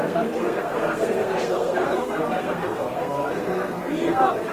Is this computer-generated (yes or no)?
yes